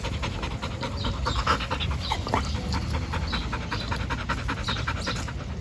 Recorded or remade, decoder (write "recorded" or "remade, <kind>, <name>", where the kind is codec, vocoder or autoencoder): recorded